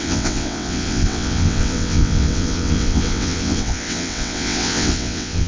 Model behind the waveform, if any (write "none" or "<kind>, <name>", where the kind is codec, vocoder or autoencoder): vocoder, WaveNeXt